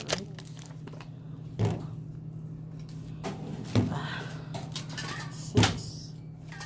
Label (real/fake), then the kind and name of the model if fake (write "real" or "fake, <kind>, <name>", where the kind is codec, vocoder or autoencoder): real